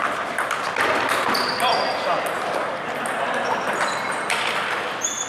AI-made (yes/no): no